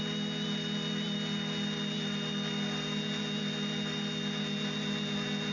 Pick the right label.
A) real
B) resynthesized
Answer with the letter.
A